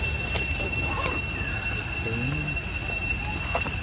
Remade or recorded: recorded